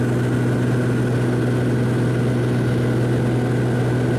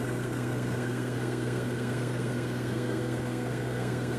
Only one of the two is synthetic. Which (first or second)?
second